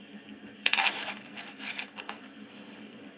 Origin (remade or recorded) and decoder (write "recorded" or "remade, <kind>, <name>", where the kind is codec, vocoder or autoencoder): remade, codec, SNAC